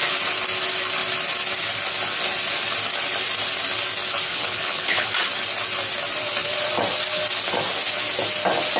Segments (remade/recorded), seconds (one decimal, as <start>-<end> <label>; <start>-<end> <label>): 0.0-4.3 recorded; 4.3-5.1 remade; 5.1-8.8 recorded